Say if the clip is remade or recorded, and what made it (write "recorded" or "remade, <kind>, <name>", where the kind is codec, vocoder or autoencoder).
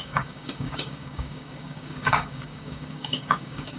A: remade, codec, DAC